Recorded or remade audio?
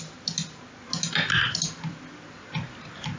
recorded